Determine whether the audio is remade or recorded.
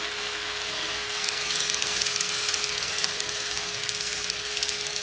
remade